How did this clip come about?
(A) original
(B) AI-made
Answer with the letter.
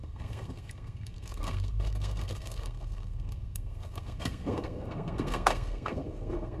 B